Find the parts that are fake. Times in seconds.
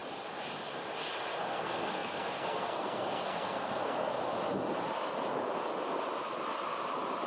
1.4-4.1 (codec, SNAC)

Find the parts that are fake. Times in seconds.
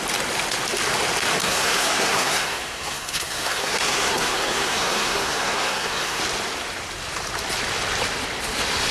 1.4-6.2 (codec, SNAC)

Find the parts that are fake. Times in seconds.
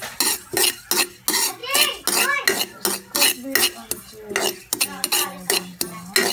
none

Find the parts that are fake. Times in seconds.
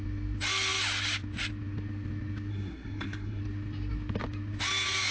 2.5-3.4 (codec, SNAC)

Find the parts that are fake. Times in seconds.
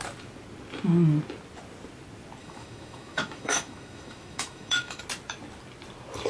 2.4-5.0 (autoencoder, DAC-VAE)